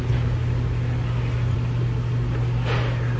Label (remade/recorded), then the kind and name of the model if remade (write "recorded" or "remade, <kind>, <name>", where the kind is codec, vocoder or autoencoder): recorded